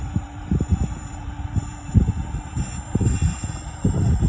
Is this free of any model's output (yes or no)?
no